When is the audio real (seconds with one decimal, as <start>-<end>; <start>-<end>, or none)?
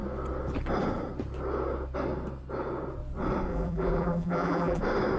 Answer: 0.0-3.5; 4.8-5.2